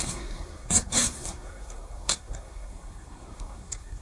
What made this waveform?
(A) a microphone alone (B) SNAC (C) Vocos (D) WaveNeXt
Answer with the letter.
B